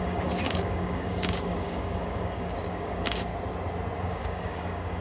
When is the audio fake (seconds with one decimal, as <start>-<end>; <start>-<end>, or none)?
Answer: 0.0-3.3; 4.0-5.0